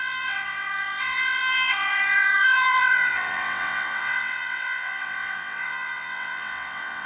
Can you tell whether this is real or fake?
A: fake